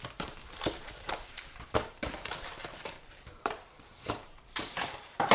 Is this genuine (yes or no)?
no